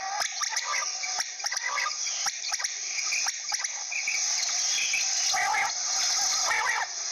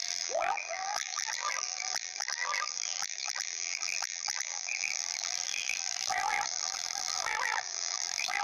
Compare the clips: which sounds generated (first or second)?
second